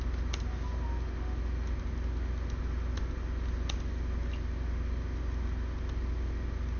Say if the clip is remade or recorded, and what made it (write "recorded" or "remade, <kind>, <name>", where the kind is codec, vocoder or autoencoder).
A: recorded